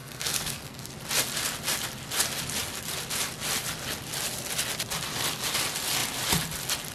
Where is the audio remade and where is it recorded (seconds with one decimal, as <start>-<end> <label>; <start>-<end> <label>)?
0.0-0.9 remade; 0.9-6.9 recorded